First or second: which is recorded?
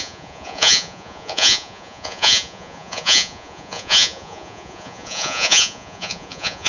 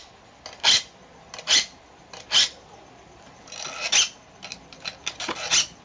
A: second